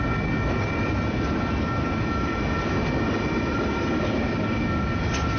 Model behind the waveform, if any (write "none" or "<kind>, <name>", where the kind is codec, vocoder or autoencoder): none